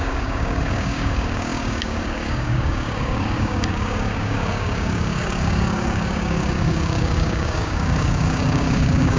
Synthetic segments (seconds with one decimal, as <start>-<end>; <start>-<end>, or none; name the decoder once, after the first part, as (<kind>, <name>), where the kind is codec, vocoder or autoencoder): 0.0-9.2 (codec, DAC)